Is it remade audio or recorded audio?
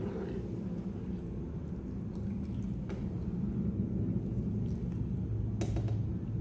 recorded